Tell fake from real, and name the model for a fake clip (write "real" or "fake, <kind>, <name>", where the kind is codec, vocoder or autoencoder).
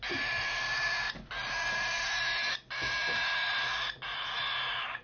real